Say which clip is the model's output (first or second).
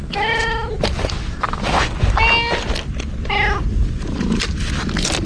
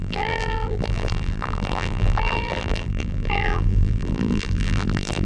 second